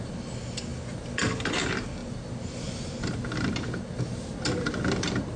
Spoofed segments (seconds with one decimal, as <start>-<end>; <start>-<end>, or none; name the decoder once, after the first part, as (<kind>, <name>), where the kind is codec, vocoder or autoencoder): none